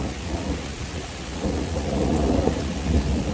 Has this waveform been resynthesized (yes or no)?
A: yes